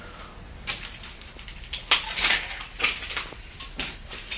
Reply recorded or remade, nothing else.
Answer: recorded